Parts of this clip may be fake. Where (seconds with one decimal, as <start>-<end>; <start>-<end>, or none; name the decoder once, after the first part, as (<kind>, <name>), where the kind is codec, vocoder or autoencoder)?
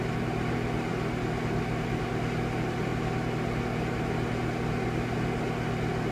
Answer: none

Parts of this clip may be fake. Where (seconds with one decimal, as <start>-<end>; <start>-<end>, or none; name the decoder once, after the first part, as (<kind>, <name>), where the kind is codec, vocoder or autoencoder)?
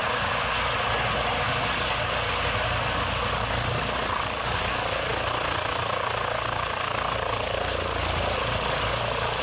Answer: none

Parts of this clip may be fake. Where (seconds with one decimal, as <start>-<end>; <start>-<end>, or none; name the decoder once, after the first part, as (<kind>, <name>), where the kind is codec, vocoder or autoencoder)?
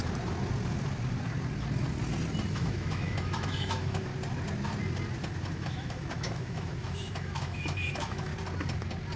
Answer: 2.5-4.1 (autoencoder, DAC-VAE); 5.5-8.3